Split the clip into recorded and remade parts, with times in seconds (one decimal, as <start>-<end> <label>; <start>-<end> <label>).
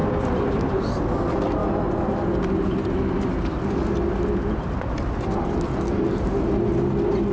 0.0-7.3 recorded